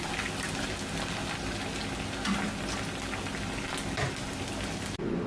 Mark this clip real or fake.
real